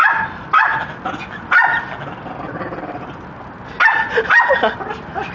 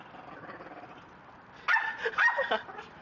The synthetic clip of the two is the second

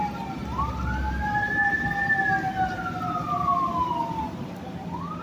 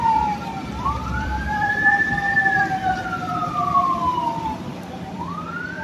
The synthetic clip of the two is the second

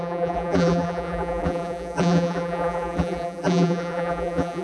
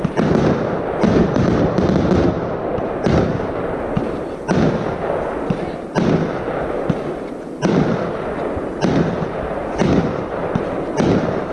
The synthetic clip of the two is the first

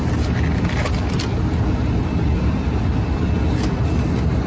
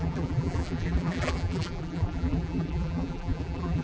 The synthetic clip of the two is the second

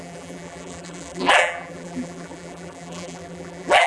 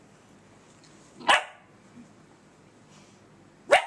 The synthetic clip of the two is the first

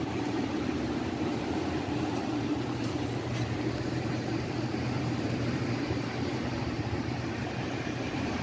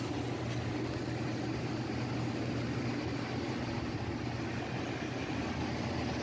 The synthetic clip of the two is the first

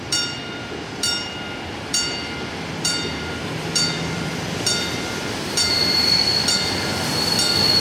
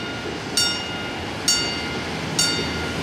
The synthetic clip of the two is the first